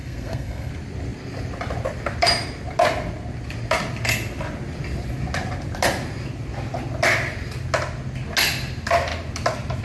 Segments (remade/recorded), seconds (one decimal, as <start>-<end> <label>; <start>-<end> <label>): 0.0-0.7 remade; 0.7-9.8 recorded